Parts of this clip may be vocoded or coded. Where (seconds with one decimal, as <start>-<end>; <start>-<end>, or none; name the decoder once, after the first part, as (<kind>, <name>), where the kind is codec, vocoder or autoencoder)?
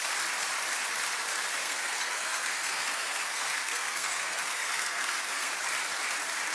1.6-5.5 (codec, SNAC)